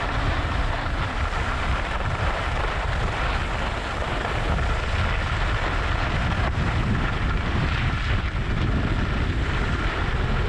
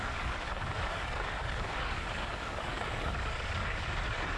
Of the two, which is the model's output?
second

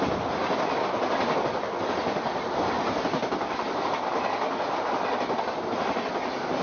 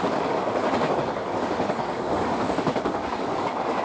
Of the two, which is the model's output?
second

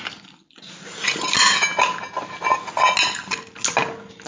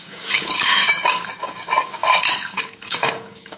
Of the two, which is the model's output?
second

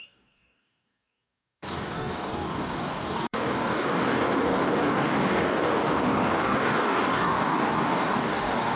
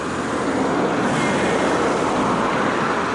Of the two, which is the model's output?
first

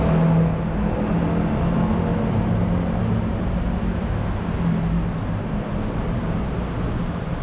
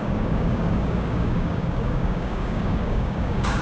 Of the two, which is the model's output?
second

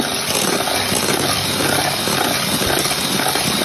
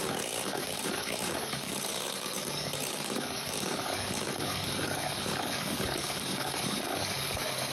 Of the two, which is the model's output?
second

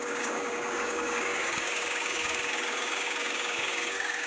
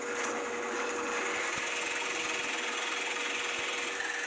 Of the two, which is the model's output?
first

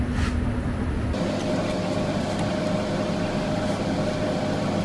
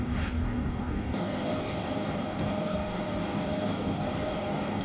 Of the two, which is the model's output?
second